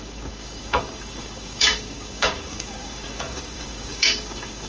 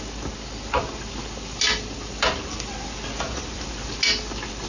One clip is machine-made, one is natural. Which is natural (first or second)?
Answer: second